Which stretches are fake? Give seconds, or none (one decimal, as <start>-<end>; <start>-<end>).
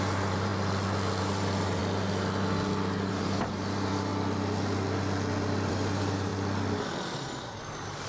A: 0.0-0.5; 1.2-1.8; 3.1-4.1; 5.7-6.3; 7.2-8.1